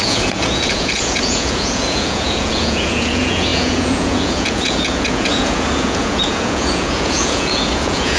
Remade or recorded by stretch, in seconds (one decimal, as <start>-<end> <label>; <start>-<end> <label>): 0.0-8.2 remade